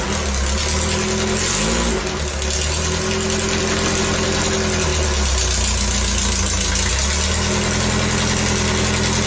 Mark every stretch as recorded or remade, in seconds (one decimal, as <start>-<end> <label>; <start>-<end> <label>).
0.0-9.3 recorded